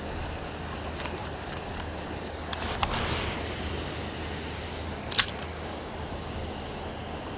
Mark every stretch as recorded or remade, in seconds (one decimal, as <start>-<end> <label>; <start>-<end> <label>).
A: 0.0-5.5 recorded; 5.5-6.8 remade; 6.8-7.4 recorded